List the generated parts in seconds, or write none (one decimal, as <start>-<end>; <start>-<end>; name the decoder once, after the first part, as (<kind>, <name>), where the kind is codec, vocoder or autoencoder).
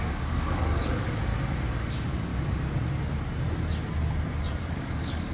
0.0-1.3 (codec, DAC); 1.9-2.3; 4.6-5.3